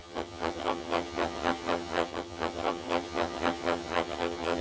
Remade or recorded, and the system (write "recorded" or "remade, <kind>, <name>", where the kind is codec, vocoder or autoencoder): remade, vocoder, HiFi-GAN